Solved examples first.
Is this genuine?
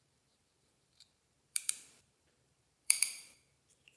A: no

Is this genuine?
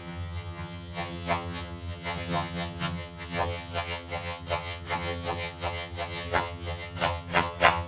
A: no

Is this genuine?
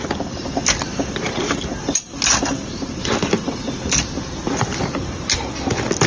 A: yes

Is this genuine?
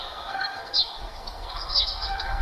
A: no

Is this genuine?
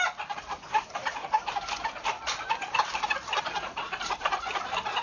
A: yes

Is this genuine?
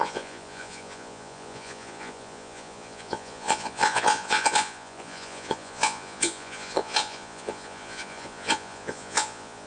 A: no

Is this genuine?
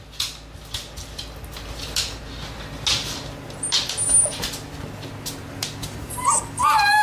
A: yes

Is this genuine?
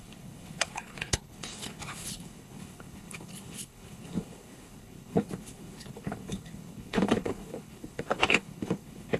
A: no